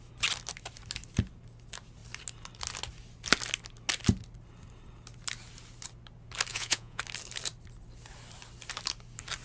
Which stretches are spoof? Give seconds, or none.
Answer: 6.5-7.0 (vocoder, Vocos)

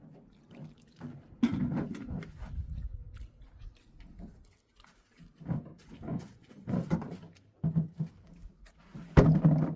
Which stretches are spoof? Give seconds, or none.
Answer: 6.1-6.7 (vocoder, Vocos)

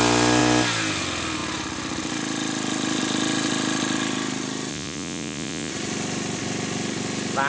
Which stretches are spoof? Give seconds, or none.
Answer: 4.7-5.7 (vocoder, Vocos)